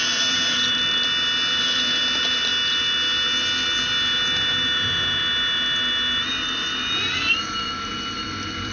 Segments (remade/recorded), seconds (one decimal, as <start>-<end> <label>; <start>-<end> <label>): 0.0-2.5 remade; 2.5-6.3 recorded; 6.3-8.7 remade